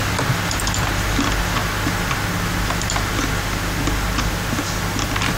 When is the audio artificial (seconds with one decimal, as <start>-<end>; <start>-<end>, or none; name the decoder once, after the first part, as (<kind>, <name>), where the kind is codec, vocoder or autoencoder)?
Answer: 0.5-1.6 (vocoder, BigVGAN v2); 4.8-5.4